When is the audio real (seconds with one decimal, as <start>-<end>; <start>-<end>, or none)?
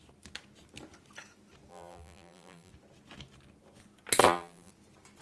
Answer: 0.0-1.7; 2.7-4.2; 4.7-5.2